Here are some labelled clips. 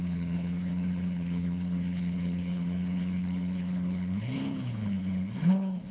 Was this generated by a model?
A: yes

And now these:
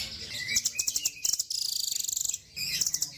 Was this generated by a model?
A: no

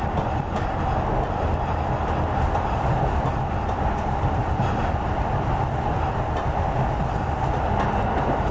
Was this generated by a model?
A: no